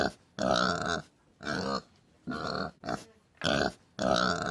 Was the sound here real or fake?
real